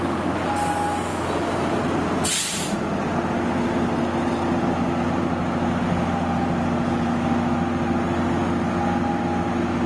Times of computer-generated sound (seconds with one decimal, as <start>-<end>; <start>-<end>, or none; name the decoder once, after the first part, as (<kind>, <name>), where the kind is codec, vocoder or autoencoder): none